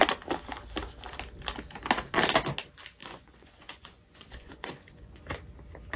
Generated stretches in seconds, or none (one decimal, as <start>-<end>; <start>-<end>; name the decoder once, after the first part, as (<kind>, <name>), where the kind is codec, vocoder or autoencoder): 3.0-5.2 (vocoder, Vocos)